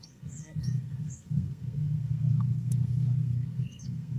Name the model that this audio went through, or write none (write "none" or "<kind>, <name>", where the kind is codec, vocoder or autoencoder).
codec, SNAC